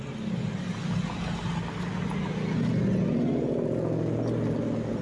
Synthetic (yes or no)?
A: no